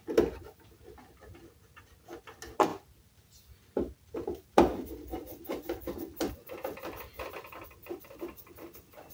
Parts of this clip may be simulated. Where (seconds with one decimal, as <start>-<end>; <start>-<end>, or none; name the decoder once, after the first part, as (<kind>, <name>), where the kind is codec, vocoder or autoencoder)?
none